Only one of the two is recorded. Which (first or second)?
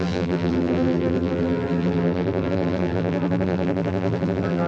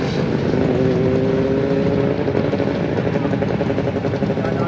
second